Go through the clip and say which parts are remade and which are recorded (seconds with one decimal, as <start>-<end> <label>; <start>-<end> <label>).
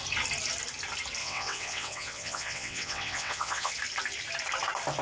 0.0-1.2 recorded; 1.2-3.7 remade; 3.7-5.0 recorded